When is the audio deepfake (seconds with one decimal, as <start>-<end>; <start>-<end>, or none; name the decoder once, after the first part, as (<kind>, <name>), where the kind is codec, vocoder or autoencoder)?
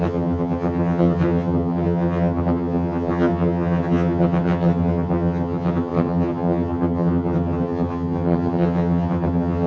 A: 0.0-9.7 (vocoder, HiFi-GAN)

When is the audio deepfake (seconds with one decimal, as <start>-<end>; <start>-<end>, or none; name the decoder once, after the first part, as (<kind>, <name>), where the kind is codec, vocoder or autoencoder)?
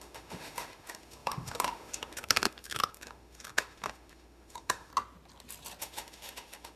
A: 0.0-4.9 (autoencoder, DAC-VAE); 5.8-6.8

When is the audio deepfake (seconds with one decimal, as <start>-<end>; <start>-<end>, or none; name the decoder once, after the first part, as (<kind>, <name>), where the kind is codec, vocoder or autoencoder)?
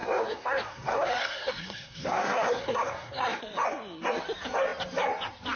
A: 0.0-3.4 (codec, SNAC)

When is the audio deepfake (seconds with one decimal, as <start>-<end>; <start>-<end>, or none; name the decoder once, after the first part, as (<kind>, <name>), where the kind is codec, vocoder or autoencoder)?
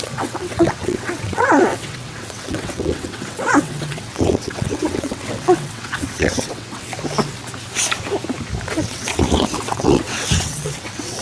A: 0.0-6.9 (vocoder, WaveNeXt); 8.7-11.2